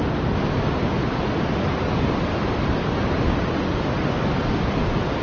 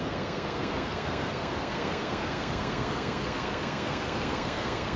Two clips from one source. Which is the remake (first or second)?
second